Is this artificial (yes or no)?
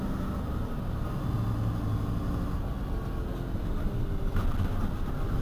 no